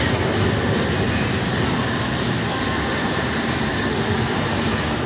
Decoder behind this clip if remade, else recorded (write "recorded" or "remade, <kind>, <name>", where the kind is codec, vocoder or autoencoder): recorded